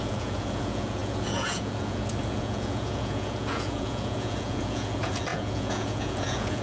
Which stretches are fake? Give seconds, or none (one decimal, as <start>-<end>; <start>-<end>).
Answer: 0.0-6.6